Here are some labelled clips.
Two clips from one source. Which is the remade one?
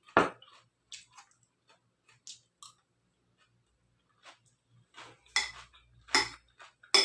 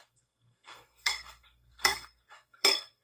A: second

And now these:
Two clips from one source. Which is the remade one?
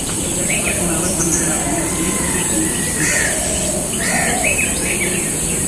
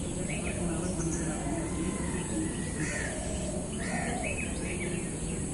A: first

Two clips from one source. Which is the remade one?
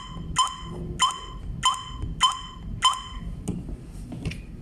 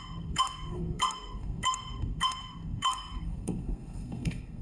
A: second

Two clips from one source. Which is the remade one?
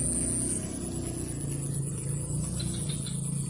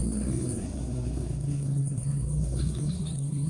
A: second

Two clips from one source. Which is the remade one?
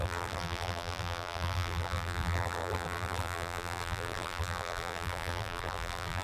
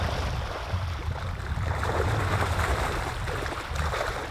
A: first